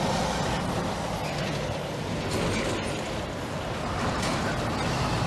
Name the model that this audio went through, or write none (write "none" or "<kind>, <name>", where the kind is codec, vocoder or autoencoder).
none